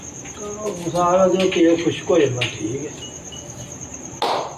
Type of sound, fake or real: real